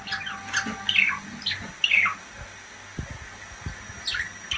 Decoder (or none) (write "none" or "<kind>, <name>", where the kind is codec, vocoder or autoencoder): none